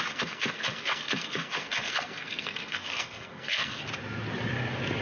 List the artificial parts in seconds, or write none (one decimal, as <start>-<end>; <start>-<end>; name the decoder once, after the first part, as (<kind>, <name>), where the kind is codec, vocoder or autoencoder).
0.0-3.8 (codec, SNAC)